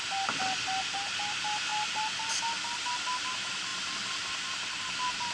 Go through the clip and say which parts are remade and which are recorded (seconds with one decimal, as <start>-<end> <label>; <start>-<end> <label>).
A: 0.0-5.3 recorded